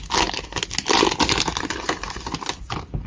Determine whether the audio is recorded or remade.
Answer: recorded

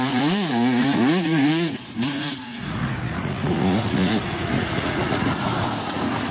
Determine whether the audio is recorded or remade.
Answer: remade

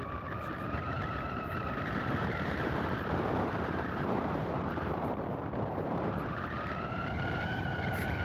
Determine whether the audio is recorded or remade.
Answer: remade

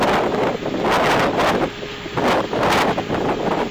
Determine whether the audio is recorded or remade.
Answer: recorded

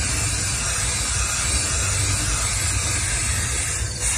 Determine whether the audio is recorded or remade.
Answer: recorded